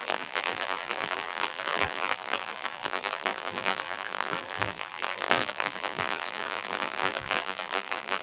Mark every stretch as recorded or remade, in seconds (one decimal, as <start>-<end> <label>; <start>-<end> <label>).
0.0-8.2 remade